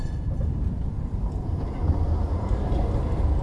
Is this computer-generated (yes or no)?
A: no